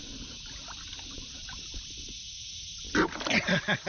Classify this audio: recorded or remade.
recorded